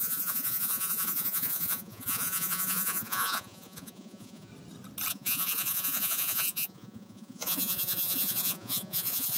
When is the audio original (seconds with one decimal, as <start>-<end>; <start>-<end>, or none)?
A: 4.5-5.1